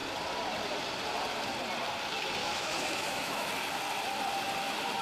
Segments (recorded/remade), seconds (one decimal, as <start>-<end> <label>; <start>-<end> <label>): 0.0-2.4 recorded; 2.4-3.5 remade; 3.5-5.0 recorded